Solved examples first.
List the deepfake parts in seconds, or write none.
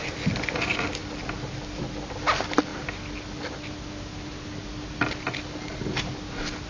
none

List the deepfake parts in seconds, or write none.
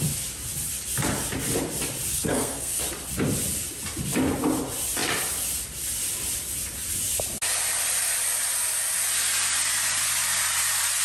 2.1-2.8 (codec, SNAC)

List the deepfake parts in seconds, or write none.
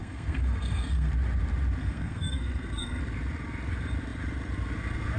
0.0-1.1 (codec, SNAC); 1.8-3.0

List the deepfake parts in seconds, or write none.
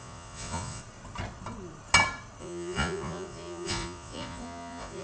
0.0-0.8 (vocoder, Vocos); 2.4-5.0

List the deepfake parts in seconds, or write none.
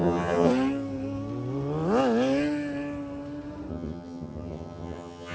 0.0-0.5 (vocoder, HiFi-GAN); 3.7-5.3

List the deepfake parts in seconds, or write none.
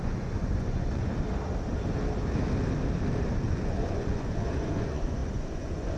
0.0-1.1 (vocoder, Vocos); 3.5-6.0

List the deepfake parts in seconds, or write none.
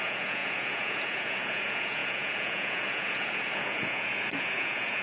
0.0-5.0 (vocoder, Vocos)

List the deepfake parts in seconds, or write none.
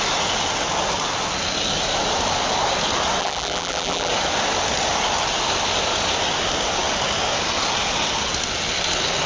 3.2-4.1 (vocoder, BigVGAN v2)